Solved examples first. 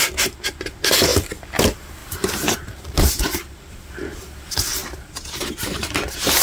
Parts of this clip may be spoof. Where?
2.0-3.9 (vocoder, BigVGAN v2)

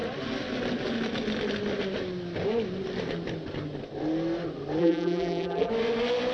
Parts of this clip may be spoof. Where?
4.8-5.7 (vocoder, BigVGAN v2)

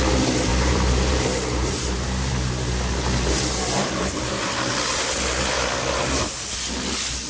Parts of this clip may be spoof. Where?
0.5-2.5 (vocoder, BigVGAN v2); 3.8-4.7

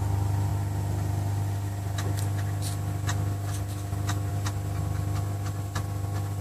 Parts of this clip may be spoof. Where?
0.0-0.5 (vocoder, BigVGAN v2); 4.3-6.4

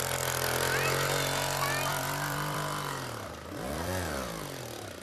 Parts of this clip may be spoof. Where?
1.9-4.6 (vocoder, BigVGAN v2)

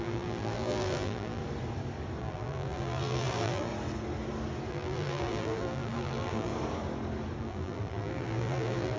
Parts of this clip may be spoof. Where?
0.0-1.4 (vocoder, BigVGAN v2); 2.2-3.7; 4.7-6.5; 7.4-9.0

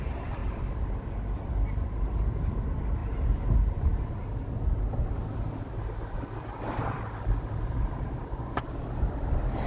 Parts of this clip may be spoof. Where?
0.0-3.0 (vocoder, BigVGAN v2); 6.4-9.7